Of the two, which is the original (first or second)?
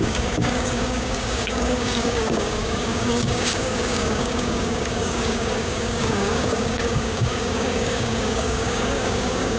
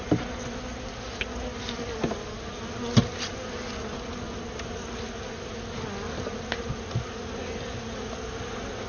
second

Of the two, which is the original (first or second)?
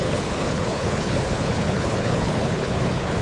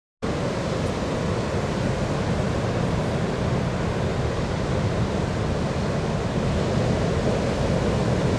second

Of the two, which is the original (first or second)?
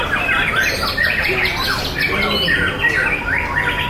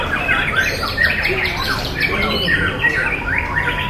first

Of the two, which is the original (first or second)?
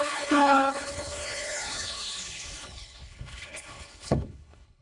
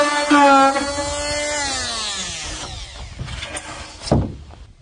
second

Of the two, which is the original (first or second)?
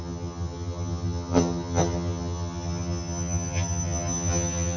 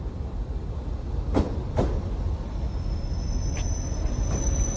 second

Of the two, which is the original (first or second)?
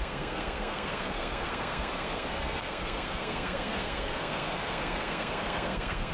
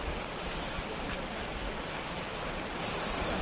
second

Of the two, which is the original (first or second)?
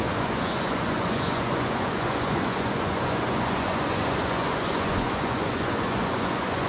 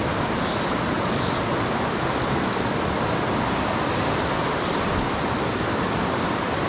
second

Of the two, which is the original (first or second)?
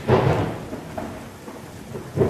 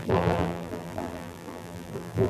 first